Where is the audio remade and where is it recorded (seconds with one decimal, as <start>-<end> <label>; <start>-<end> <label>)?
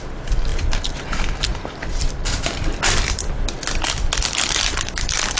0.0-0.5 remade; 0.5-1.0 recorded; 1.0-1.5 remade; 1.5-4.7 recorded; 4.7-5.4 remade